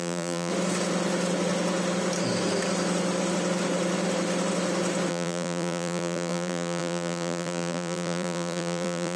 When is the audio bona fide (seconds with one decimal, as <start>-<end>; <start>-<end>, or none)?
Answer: 0.5-5.1